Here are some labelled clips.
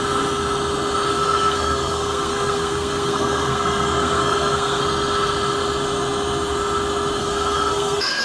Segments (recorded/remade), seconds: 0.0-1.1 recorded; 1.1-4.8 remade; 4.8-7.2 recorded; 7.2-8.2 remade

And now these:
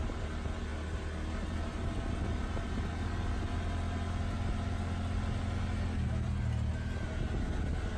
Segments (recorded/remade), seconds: 0.0-8.0 recorded

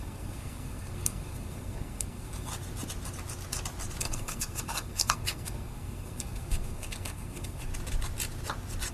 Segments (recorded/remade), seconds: 0.0-2.5 remade; 2.5-4.0 recorded; 4.0-7.7 remade; 7.7-8.9 recorded

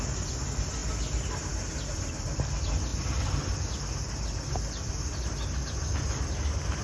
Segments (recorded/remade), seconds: 0.0-6.8 recorded

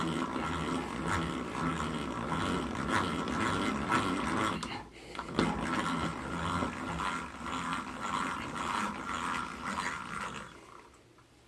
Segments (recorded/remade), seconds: 0.0-11.5 recorded

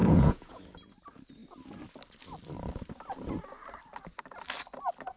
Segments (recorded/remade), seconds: 0.0-0.6 remade; 0.6-5.2 recorded